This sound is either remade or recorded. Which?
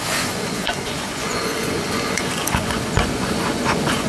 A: remade